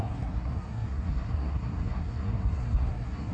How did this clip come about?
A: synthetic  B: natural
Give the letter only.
A